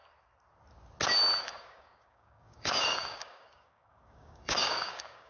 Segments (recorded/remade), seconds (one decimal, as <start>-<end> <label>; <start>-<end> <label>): 0.0-1.4 recorded; 1.4-5.3 remade